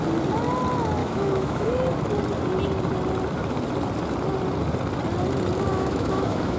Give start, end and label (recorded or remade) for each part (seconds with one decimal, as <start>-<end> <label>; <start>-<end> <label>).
0.0-1.0 recorded; 1.0-1.7 remade; 1.7-5.7 recorded; 5.7-6.6 remade